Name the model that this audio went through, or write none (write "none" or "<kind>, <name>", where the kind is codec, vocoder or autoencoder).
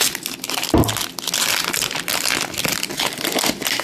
none